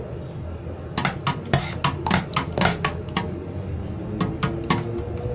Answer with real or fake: real